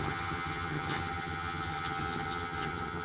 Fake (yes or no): yes